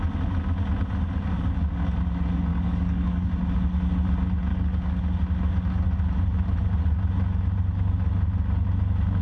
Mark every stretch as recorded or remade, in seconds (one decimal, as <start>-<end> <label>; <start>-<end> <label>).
0.0-2.5 recorded; 2.5-3.3 remade; 3.3-4.5 recorded; 4.5-5.0 remade; 5.0-9.2 recorded